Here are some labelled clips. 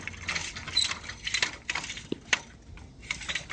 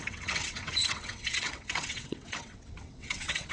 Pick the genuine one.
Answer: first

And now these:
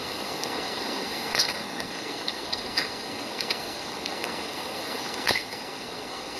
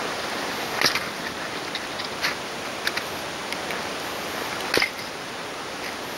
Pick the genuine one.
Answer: second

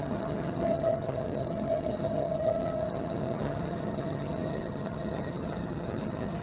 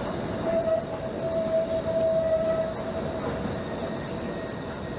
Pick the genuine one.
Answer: second